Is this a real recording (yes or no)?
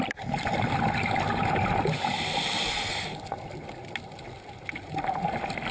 yes